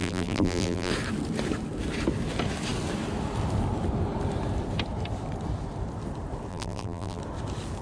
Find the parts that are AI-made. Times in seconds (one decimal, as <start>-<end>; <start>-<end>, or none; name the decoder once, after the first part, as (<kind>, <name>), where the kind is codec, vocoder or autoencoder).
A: 0.0-0.9 (vocoder, BigVGAN v2); 6.5-7.2